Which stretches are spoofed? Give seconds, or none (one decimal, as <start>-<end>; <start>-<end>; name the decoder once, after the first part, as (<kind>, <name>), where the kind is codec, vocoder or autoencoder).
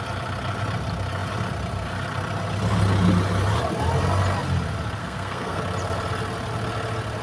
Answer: 5.0-5.6 (codec, SNAC)